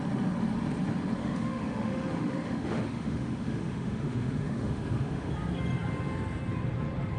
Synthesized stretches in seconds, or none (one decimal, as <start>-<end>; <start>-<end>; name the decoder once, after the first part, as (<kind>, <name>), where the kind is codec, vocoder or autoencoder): 1.2-5.3 (autoencoder, DAC-VAE)